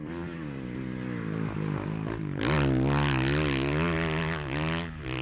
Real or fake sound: real